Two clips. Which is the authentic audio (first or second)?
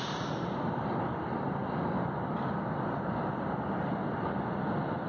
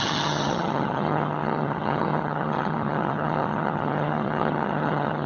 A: first